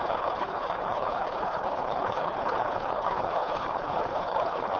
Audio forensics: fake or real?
fake